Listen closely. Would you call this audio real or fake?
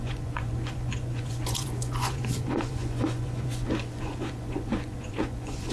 fake